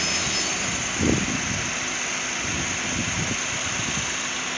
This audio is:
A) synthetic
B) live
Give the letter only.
B